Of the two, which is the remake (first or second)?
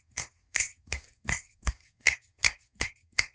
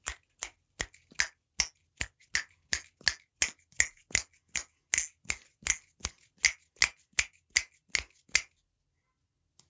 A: first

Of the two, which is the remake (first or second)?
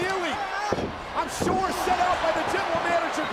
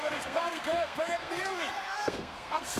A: second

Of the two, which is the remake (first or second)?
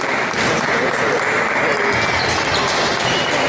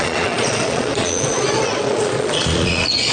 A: second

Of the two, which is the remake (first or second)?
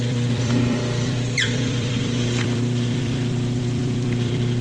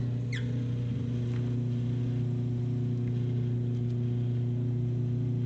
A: first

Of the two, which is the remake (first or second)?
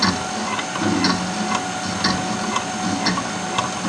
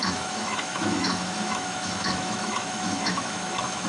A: second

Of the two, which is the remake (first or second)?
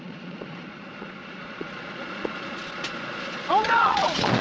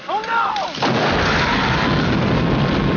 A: first